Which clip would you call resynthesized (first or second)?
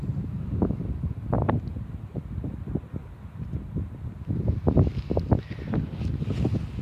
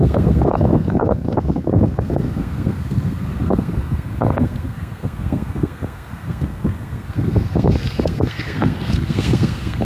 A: second